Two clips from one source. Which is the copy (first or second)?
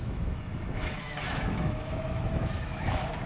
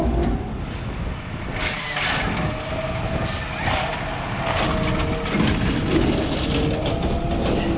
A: first